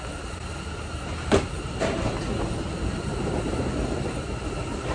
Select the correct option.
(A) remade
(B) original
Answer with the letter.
B